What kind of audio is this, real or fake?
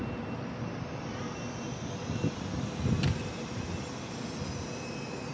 real